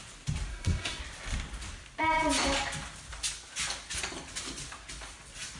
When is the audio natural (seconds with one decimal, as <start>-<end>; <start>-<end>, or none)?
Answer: 0.0-0.5; 1.0-5.6